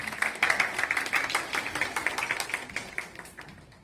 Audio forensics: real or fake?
real